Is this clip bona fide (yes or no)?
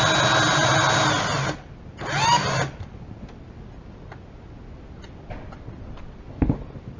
yes